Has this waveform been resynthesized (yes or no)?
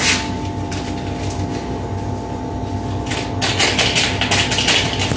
no